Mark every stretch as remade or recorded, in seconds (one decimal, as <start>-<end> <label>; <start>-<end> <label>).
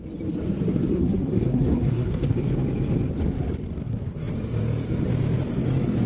0.0-0.9 recorded; 0.9-2.4 remade; 2.4-3.8 recorded; 3.8-4.3 remade; 4.3-6.1 recorded